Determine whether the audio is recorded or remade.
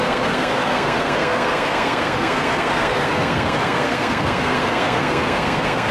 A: remade